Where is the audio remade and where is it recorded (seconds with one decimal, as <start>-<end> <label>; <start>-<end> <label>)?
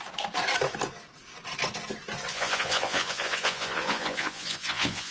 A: 0.0-2.3 recorded; 2.3-5.1 remade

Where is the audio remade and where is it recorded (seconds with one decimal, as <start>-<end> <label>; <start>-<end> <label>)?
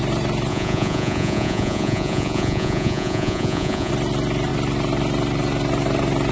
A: 0.0-0.5 recorded; 0.5-3.9 remade; 3.9-6.3 recorded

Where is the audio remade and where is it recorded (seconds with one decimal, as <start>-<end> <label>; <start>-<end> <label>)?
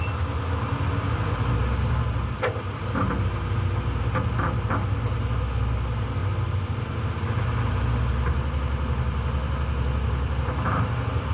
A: 0.0-11.3 recorded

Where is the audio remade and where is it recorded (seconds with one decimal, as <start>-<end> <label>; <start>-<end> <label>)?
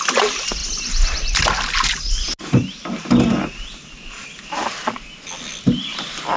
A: 0.0-6.4 recorded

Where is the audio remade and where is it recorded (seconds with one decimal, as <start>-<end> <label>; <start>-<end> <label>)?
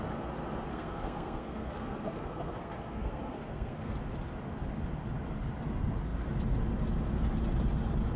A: 0.0-0.7 recorded; 0.7-4.0 remade; 4.0-8.2 recorded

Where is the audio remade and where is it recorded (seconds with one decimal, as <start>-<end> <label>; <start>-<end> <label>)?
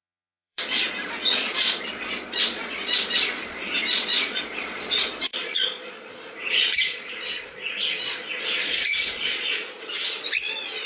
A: 0.0-10.9 remade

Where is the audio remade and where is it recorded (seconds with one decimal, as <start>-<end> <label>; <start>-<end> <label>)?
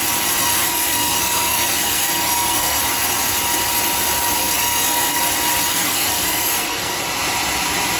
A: 0.0-0.5 recorded; 0.5-2.8 remade; 2.8-4.4 recorded; 4.4-5.2 remade; 5.2-5.7 recorded; 5.7-7.0 remade; 7.0-8.0 recorded